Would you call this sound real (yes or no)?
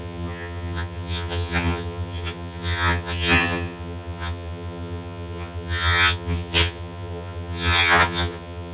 no